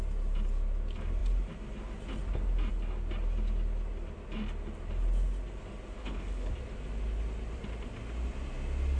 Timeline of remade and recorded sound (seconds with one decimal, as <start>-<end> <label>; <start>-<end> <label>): 0.0-6.0 recorded; 6.0-6.5 remade; 6.5-9.0 recorded